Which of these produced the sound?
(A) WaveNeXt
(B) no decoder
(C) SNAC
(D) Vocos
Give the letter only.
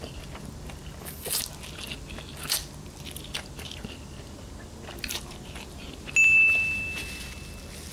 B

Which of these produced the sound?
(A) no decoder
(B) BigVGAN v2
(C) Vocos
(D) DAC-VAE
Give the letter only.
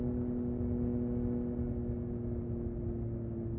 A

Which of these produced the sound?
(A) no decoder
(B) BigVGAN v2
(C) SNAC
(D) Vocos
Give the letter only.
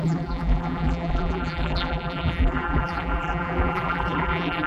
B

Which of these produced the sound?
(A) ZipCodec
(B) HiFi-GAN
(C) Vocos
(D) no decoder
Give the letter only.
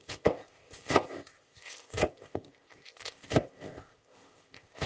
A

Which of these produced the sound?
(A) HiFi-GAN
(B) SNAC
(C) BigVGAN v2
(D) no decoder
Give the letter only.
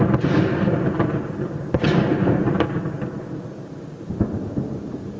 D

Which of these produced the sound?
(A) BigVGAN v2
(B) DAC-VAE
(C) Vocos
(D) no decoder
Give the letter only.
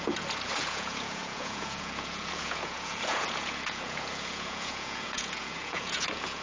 C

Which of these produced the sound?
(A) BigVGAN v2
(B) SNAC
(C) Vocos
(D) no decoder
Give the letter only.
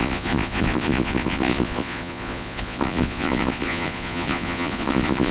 C